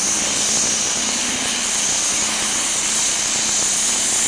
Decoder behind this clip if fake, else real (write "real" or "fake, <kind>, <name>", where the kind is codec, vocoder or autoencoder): real